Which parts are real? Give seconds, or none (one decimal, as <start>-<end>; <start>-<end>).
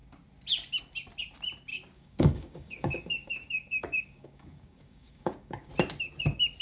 0.0-1.7; 5.7-6.6